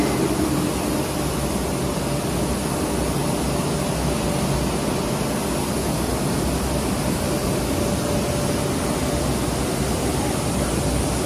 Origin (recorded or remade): recorded